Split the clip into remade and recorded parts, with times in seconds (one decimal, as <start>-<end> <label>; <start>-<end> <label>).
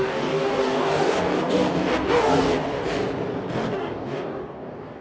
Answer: 0.0-2.8 remade; 2.8-3.7 recorded; 3.7-5.0 remade